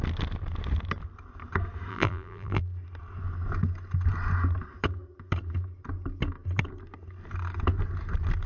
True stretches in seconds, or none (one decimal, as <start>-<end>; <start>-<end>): 0.0-1.9; 2.6-8.5